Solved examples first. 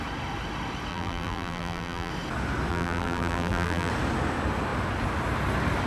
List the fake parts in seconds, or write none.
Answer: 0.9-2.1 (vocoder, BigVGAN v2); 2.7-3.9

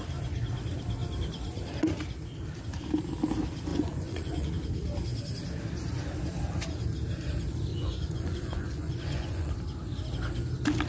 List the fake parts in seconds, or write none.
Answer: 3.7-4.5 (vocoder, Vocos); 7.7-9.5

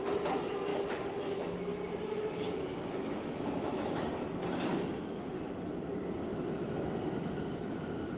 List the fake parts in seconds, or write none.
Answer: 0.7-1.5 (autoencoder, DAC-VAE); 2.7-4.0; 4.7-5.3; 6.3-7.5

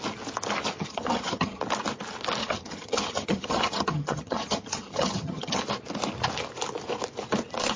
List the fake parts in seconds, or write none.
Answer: 0.8-1.6 (vocoder, HiFi-GAN); 2.4-5.6